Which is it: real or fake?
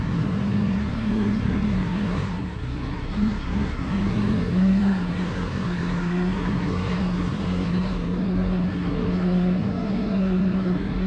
fake